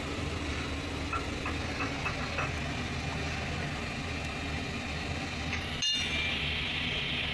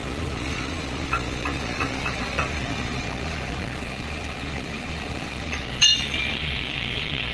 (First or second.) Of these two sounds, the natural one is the first